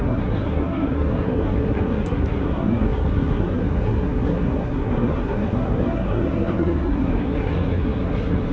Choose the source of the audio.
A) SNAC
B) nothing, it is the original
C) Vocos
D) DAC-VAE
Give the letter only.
A